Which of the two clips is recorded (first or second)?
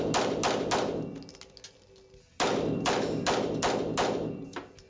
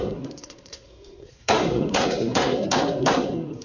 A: first